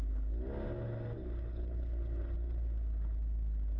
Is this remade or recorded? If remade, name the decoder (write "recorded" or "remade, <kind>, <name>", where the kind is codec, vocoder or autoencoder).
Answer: recorded